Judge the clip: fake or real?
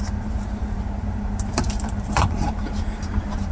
fake